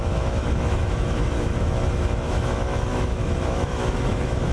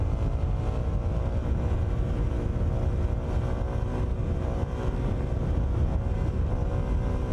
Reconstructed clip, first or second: first